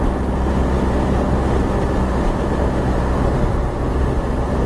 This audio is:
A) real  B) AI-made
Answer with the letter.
A